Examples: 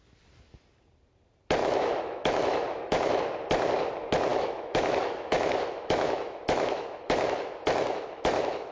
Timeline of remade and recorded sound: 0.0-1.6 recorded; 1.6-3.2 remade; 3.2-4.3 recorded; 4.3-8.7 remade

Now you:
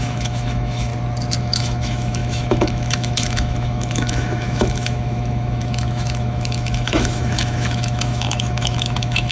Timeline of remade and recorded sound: 0.0-0.9 remade; 0.9-1.4 recorded; 1.4-9.3 remade

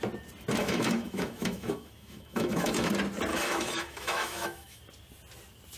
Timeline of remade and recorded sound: 0.0-0.6 recorded; 0.6-2.9 remade; 2.9-3.3 recorded; 3.3-4.8 remade; 4.8-5.8 recorded

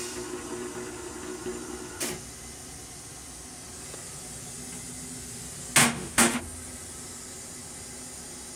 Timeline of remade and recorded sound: 0.0-5.8 recorded; 5.8-6.4 remade; 6.4-8.6 recorded

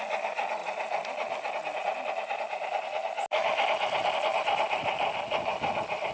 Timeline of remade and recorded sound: 0.0-6.1 recorded

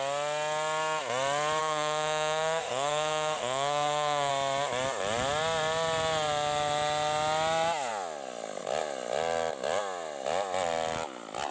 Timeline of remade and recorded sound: 0.0-1.6 recorded; 1.6-4.3 remade; 4.3-11.5 recorded

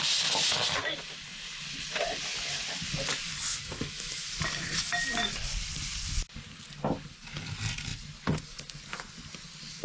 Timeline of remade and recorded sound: 0.0-3.5 recorded; 3.5-4.3 remade; 4.3-9.8 recorded